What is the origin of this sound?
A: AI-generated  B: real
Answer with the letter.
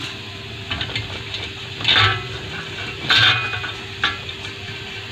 B